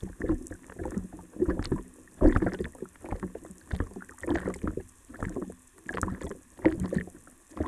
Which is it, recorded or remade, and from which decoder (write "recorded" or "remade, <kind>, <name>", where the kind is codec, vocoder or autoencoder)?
recorded